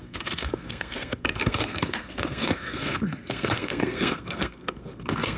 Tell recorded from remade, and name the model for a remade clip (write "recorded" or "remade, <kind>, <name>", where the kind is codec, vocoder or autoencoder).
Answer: remade, codec, SNAC